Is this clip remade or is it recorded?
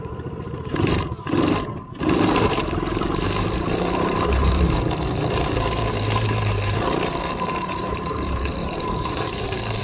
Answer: remade